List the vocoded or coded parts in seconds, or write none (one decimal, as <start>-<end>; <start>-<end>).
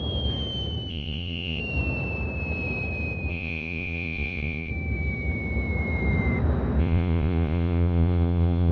0.9-1.6; 3.3-4.7; 6.8-8.7